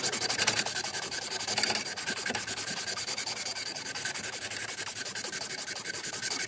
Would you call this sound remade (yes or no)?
no